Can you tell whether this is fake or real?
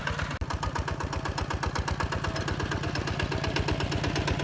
real